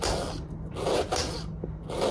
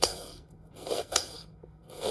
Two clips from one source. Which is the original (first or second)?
first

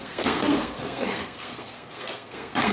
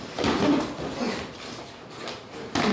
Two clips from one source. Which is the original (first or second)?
second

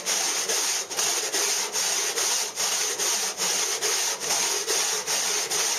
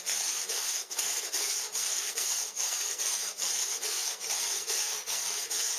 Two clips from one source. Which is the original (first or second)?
first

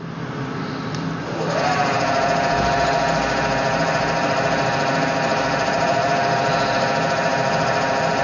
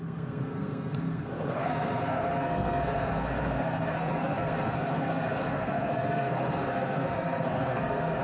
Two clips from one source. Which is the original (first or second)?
first